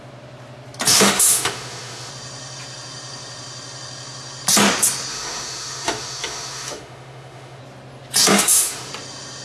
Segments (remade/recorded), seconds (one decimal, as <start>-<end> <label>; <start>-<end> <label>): 0.0-0.9 recorded; 0.9-2.1 remade; 2.1-5.1 recorded; 5.1-7.6 remade; 7.6-8.3 recorded; 8.3-8.9 remade; 8.9-9.4 recorded